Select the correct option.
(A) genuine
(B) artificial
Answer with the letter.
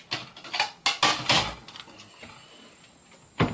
A